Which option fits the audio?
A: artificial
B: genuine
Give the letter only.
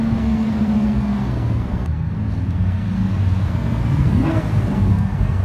A